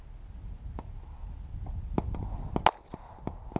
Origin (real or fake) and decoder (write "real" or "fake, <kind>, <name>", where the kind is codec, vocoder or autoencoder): real